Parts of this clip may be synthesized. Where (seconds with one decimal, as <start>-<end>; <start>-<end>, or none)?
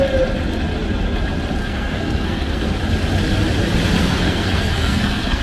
1.6-2.8; 4.0-5.4